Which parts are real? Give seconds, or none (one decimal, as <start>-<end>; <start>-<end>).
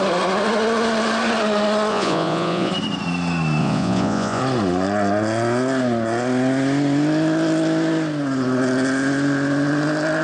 0.0-1.9; 2.7-3.6; 4.4-10.2